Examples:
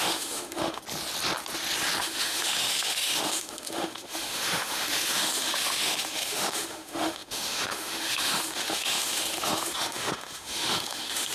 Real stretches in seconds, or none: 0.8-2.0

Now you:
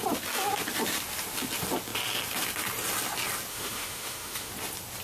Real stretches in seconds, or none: 0.0-3.5; 4.5-5.0

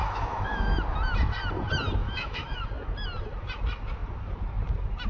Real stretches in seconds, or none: 0.7-2.0; 2.6-5.1

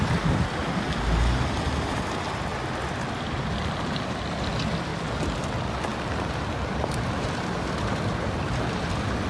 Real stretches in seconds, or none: 0.0-9.3